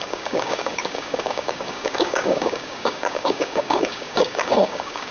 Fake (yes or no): yes